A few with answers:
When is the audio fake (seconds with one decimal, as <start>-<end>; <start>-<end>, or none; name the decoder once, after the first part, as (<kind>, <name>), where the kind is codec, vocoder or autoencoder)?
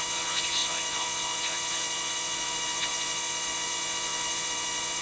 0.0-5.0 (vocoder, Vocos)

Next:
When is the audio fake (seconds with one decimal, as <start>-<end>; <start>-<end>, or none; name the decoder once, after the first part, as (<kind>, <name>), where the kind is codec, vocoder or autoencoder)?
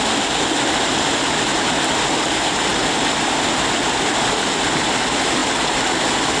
none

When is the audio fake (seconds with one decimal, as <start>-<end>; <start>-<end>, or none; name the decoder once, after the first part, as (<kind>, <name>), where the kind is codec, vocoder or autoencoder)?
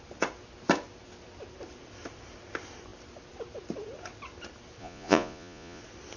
4.8-5.8 (vocoder, Vocos)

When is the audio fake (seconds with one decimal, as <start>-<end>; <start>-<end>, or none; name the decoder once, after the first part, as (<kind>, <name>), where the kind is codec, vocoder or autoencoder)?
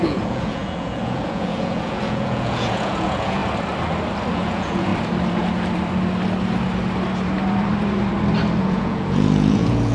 0.0-3.4 (vocoder, Vocos); 4.3-4.9; 8.6-9.9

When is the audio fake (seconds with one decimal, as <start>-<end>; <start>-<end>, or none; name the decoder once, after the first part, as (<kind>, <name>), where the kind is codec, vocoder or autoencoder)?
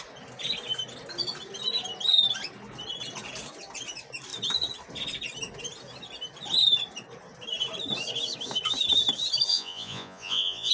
9.5-10.7 (vocoder, Vocos)